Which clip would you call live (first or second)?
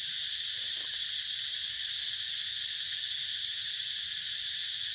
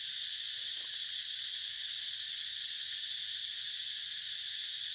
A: second